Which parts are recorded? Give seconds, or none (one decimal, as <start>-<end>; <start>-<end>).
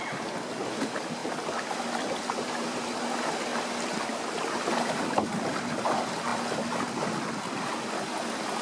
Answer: 0.0-8.6